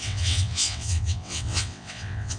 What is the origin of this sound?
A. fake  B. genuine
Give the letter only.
A